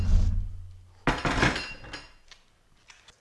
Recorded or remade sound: recorded